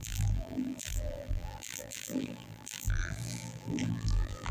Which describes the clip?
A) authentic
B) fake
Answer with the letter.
B